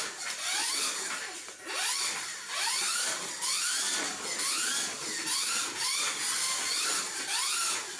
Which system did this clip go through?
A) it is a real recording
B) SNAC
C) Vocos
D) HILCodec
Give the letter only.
A